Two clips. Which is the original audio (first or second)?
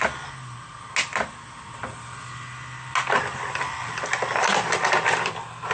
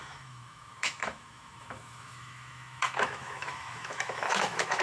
first